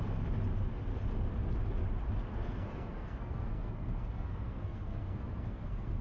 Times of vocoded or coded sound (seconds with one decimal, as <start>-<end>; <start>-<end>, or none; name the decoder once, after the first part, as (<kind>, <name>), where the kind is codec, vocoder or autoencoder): 2.3-6.0 (codec, SNAC)